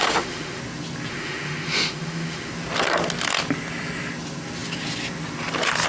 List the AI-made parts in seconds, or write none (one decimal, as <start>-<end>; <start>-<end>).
0.0-0.6; 1.1-2.5